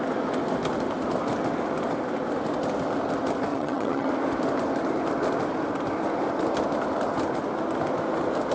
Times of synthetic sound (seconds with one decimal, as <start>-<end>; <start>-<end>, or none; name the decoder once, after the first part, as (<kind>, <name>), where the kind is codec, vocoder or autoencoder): 3.5-4.1 (vocoder, HiFi-GAN)